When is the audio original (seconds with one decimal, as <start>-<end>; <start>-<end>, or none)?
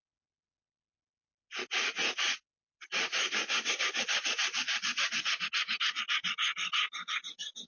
0.0-3.2; 4.0-7.7